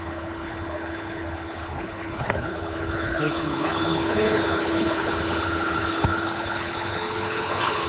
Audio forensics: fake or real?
fake